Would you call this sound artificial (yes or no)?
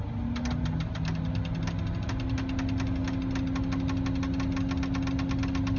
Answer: no